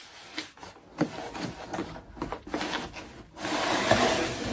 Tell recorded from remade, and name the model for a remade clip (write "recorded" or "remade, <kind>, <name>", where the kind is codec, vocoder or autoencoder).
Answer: recorded